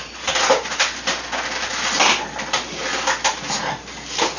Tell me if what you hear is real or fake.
real